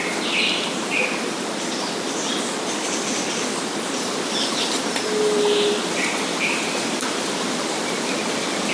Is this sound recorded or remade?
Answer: remade